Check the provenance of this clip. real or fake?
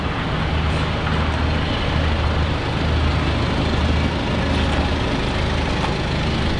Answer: real